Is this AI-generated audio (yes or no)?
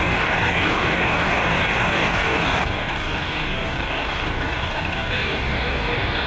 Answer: yes